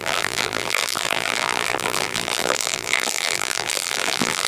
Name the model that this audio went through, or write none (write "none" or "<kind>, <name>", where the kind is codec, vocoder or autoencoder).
vocoder, BigVGAN v2